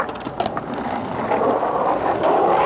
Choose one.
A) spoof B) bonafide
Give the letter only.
B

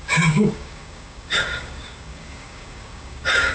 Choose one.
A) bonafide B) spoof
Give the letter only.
B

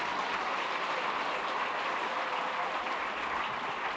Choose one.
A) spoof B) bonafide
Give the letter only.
B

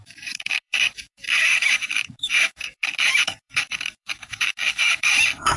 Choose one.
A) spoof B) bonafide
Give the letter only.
A